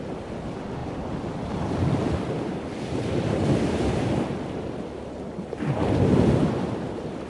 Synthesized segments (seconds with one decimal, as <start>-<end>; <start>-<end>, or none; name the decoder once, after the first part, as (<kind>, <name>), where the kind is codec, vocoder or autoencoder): none